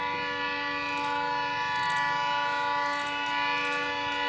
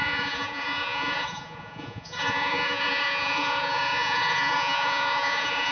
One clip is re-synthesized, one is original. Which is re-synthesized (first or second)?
second